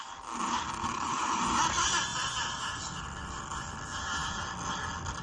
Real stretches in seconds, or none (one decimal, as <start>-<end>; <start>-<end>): 0.0-0.8; 1.4-5.2